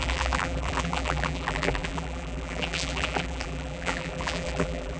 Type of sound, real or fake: fake